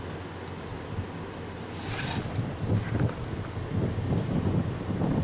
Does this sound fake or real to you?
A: fake